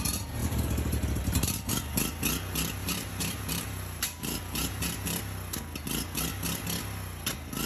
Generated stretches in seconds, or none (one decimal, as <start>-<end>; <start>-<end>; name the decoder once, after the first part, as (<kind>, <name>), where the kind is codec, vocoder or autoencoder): 0.4-1.7 (vocoder, BigVGAN v2); 2.8-5.2